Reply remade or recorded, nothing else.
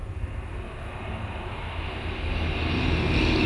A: recorded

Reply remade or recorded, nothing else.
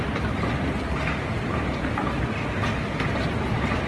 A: recorded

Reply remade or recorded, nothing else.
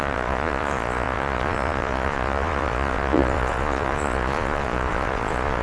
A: remade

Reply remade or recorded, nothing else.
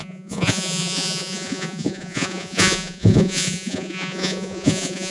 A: remade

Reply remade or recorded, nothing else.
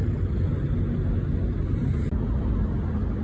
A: recorded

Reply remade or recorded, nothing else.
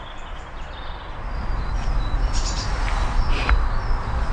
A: recorded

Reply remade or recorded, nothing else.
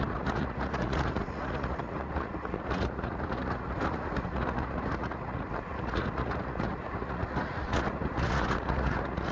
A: remade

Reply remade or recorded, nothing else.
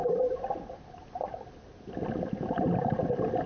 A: recorded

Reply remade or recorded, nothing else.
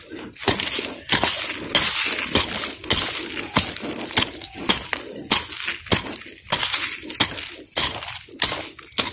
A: recorded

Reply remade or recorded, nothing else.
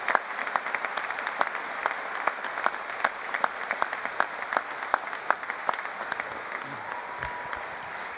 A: recorded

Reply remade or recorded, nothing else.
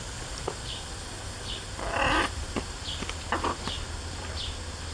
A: recorded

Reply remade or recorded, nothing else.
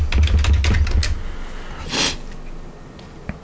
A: recorded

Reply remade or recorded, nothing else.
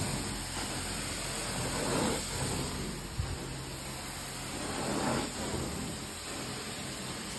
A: recorded